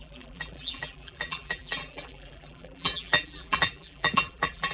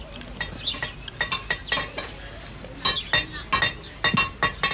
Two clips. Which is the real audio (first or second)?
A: second